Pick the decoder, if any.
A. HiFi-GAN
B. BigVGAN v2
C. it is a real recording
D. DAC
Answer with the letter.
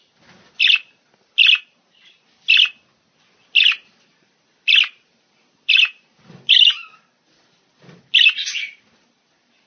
C